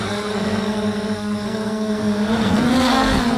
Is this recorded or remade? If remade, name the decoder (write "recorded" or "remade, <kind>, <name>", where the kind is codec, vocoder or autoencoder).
remade, codec, SNAC